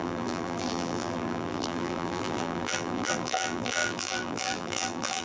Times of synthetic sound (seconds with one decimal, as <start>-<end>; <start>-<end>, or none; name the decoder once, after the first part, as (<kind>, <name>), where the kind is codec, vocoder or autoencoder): 0.0-5.2 (vocoder, BigVGAN v2)